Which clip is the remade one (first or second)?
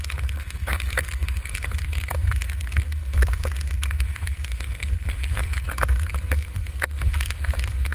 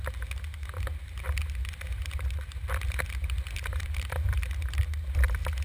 first